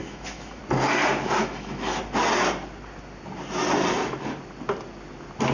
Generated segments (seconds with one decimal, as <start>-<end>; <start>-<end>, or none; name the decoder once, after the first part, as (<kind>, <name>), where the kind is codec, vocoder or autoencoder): 0.0-0.6 (autoencoder, DAC-VAE); 1.4-2.0